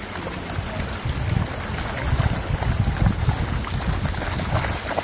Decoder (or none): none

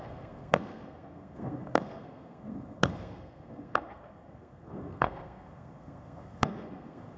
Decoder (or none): codec, SNAC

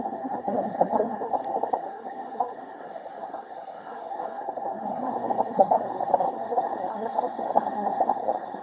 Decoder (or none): codec, SNAC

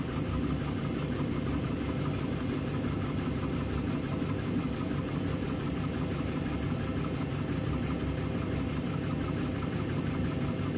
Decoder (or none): none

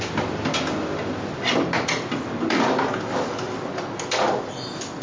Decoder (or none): none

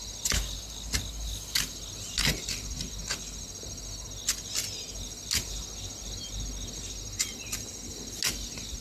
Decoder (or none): none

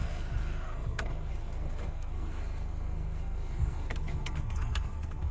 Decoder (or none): codec, SNAC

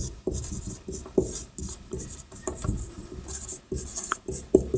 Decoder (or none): none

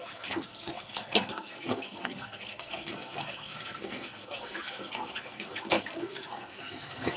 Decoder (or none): codec, SNAC